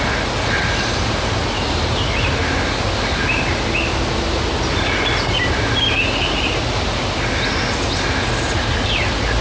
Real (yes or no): yes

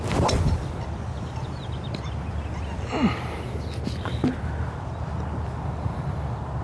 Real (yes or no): yes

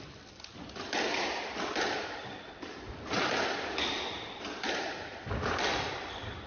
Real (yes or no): no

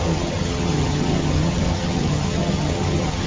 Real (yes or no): no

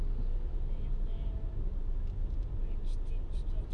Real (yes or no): yes